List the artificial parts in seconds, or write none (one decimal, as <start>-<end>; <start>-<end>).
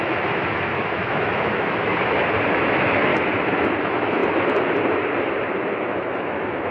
0.0-1.9; 2.5-3.1; 3.8-4.2; 5.7-6.7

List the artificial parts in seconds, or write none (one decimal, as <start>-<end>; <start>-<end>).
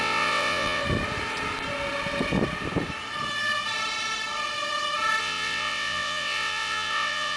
0.0-0.8; 5.2-7.4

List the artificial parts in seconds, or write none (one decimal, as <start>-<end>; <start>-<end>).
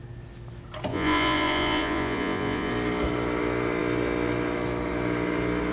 0.9-2.7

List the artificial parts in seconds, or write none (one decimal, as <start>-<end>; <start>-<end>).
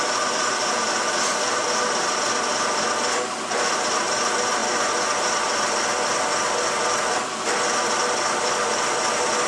none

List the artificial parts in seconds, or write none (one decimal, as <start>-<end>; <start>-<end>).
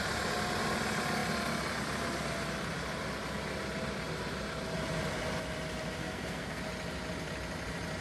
6.0-6.6